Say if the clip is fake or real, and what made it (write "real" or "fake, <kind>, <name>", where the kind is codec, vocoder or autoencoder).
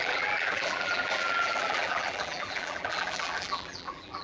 fake, vocoder, BigVGAN v2